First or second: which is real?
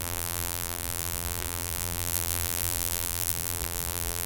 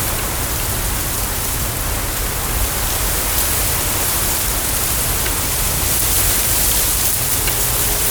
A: second